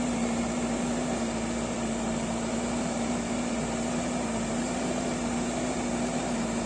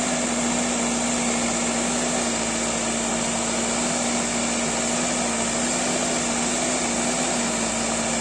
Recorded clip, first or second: second